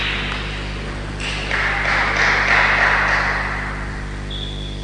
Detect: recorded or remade recorded